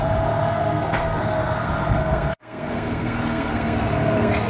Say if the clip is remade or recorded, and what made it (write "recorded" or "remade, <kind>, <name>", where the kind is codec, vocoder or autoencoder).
remade, codec, SNAC